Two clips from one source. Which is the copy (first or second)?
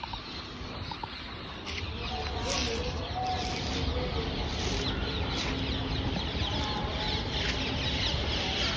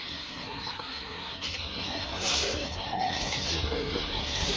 second